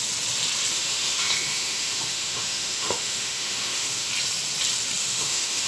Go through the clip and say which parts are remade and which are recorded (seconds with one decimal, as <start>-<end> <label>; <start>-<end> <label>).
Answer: 0.0-0.7 recorded; 0.7-4.1 remade; 4.1-5.0 recorded; 5.0-5.7 remade